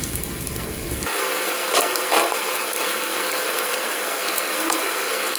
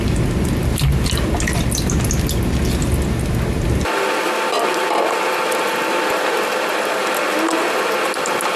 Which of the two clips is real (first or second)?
second